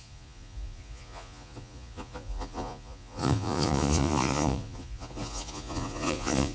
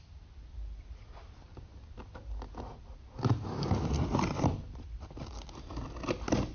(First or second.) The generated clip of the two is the first